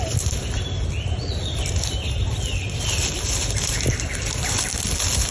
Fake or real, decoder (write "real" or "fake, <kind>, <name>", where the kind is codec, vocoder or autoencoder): real